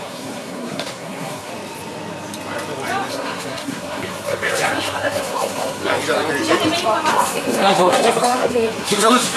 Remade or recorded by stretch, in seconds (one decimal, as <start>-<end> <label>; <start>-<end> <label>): 0.0-1.5 remade; 1.5-3.1 recorded; 3.1-5.9 remade; 5.9-7.1 recorded; 7.1-9.4 remade